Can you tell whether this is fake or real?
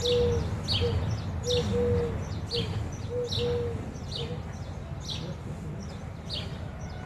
real